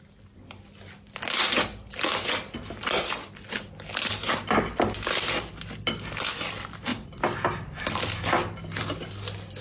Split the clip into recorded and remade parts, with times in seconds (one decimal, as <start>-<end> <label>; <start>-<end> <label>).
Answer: 0.0-9.6 recorded

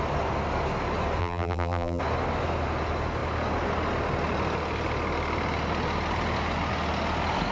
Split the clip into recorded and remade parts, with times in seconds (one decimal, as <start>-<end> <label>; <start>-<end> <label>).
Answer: 0.0-1.2 recorded; 1.2-2.0 remade; 2.0-7.5 recorded